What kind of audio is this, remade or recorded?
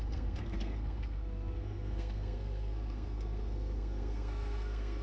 remade